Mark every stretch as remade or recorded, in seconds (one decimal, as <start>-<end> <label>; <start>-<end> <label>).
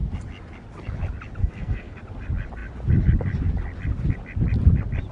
0.0-1.4 recorded; 1.4-2.0 remade; 2.0-5.1 recorded